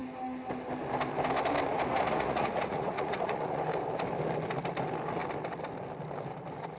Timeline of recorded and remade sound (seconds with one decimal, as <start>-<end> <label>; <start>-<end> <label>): 0.0-1.9 recorded; 1.9-3.6 remade; 3.6-6.8 recorded